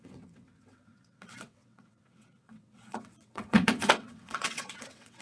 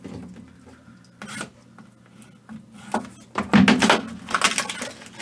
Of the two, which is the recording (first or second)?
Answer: second